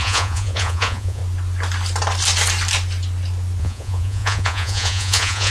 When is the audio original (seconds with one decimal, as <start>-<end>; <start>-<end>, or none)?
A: 1.2-3.6